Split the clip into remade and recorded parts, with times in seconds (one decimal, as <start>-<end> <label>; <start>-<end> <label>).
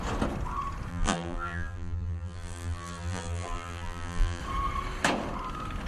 0.0-0.9 recorded; 0.9-4.4 remade; 4.4-5.9 recorded